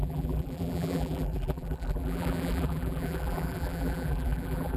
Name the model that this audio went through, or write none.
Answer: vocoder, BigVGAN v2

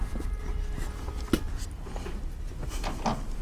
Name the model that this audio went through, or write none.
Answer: none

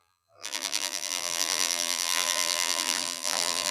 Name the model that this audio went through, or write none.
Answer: vocoder, BigVGAN v2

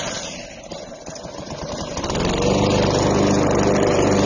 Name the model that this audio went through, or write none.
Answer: none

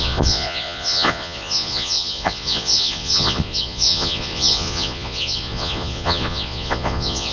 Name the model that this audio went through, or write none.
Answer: vocoder, Vocos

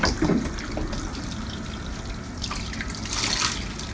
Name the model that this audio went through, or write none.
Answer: none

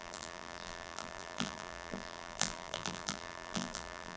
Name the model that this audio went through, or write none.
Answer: vocoder, BigVGAN v2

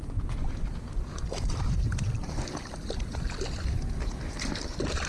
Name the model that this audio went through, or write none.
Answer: vocoder, BigVGAN v2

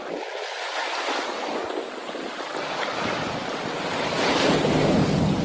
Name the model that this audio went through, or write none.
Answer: none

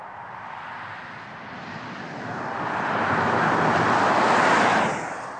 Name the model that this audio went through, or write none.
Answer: none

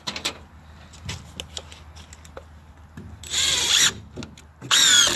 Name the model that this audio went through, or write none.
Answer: none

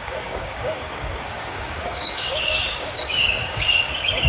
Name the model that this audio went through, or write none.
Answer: codec, DAC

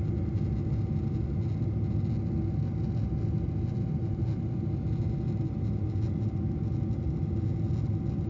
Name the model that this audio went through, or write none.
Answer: none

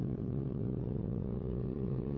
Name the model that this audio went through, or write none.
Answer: vocoder, WaveNeXt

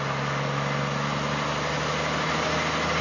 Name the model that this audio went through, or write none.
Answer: none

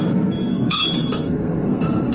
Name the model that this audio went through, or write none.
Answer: codec, SNAC